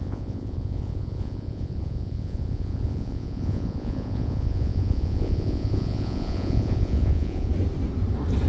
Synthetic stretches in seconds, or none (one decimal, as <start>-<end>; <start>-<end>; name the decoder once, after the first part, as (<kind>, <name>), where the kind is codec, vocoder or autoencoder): 0.0-7.5 (vocoder, Vocos)